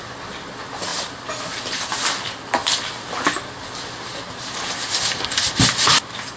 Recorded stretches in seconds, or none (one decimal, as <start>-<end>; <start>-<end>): 0.0-6.4